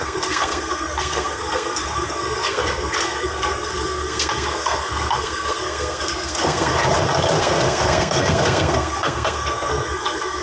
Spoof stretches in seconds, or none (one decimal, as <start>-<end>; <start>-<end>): 0.0-6.7; 7.4-10.4